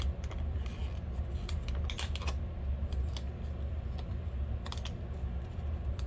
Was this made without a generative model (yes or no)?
yes